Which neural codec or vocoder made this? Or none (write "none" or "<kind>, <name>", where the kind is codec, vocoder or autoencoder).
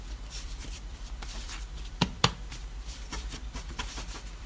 vocoder, BigVGAN v2